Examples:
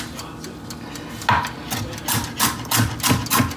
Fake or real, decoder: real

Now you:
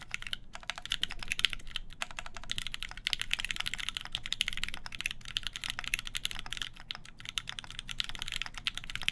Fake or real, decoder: real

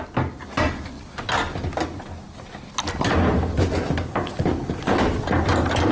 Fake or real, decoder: real